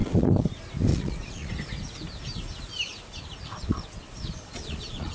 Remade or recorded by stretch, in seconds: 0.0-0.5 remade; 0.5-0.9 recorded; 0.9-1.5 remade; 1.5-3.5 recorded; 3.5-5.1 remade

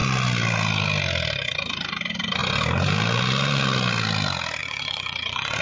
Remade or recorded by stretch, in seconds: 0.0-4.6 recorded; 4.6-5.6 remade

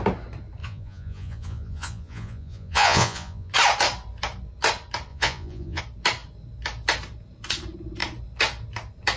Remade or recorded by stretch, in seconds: 0.0-0.6 recorded; 0.6-3.5 remade; 3.5-5.1 recorded; 5.1-5.8 remade; 5.8-9.2 recorded

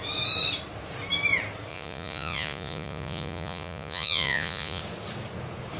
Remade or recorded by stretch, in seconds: 0.0-1.7 recorded; 1.7-4.8 remade; 4.8-5.8 recorded